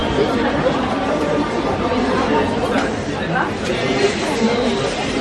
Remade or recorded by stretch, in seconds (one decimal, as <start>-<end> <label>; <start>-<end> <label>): 0.0-0.6 recorded; 0.6-5.2 remade